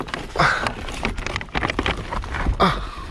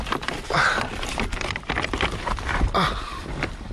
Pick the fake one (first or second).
second